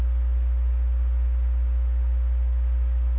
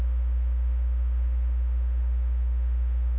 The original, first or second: first